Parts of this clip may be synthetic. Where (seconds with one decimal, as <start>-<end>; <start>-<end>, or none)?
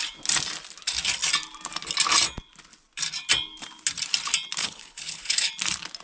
4.6-5.5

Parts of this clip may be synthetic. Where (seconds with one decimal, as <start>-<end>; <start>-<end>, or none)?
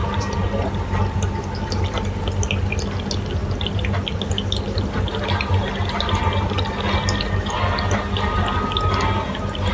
none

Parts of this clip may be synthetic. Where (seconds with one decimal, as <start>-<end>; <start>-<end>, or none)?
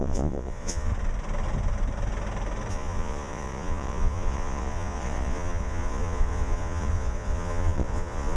0.0-0.9; 2.7-8.4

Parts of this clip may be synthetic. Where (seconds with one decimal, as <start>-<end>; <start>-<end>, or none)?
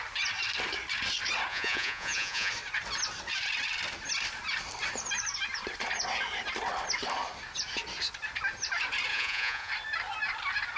1.5-2.5; 9.1-9.7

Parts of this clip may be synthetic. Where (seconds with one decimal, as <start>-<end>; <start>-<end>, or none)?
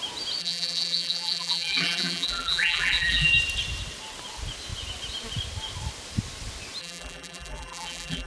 0.4-3.3; 6.8-8.3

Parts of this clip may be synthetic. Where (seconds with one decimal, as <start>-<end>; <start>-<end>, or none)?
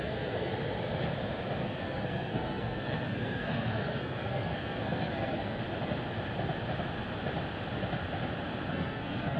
0.0-0.5; 1.6-5.6; 8.7-9.4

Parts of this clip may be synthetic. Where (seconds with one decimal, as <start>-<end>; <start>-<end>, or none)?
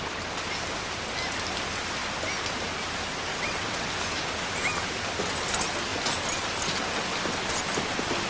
3.3-3.9